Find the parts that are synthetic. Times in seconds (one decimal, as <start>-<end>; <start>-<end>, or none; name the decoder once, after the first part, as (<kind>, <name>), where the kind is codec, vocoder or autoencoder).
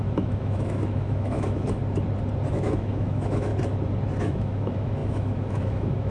0.0-1.8 (autoencoder, DAC-VAE); 2.5-3.5; 4.2-6.1